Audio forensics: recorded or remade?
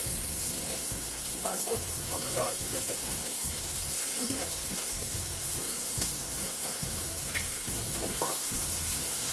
remade